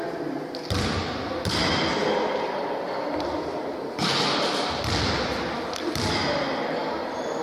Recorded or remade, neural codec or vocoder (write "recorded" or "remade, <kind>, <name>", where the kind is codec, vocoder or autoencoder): recorded